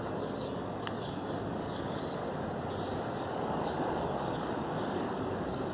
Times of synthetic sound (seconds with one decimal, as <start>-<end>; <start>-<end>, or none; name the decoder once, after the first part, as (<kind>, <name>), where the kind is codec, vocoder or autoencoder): 0.0-2.2 (codec, DAC); 3.2-5.7